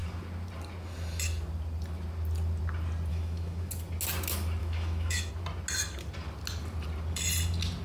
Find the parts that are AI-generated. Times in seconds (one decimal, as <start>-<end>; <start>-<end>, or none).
3.1-3.7; 4.6-5.3